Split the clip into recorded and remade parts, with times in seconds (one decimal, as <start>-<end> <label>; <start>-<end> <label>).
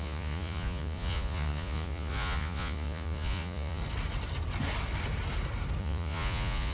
0.0-3.8 remade; 3.8-5.8 recorded; 5.8-6.7 remade